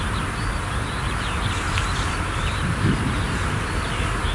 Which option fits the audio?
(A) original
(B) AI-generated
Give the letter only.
B